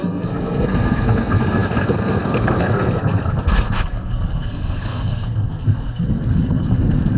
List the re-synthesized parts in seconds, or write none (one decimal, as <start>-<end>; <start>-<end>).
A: 0.0-7.2